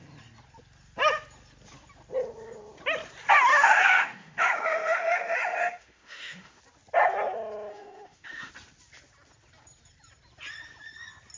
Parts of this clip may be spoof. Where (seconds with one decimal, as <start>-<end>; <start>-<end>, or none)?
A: 3.5-6.6; 7.7-8.5